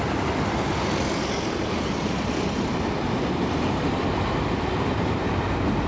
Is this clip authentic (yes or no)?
yes